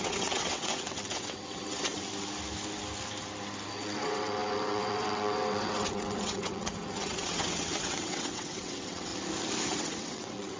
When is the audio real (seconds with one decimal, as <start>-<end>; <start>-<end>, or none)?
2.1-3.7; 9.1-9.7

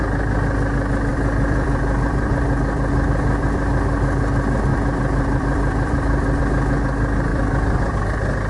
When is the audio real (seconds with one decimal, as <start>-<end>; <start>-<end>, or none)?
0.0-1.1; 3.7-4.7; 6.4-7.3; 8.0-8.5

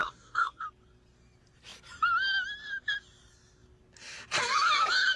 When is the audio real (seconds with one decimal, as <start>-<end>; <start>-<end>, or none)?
0.6-5.2